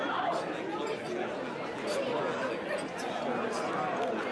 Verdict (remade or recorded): recorded